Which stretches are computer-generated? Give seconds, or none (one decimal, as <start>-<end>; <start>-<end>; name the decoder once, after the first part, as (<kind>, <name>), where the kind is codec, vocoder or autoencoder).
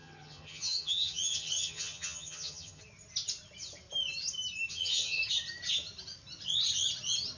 0.0-2.8 (vocoder, HiFi-GAN); 4.7-5.2